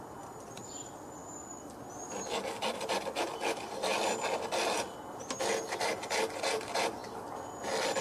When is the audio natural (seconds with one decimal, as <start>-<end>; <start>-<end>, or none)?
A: 1.2-5.4; 7.0-8.0